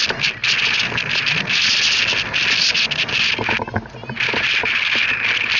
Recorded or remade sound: recorded